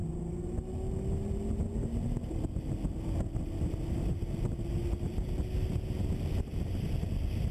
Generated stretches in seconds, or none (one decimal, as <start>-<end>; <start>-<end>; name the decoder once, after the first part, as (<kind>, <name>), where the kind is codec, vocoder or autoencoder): none